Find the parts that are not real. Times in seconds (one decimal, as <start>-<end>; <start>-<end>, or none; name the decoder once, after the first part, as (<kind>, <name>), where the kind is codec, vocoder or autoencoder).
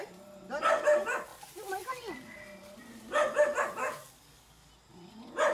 3.8-4.7 (codec, DAC)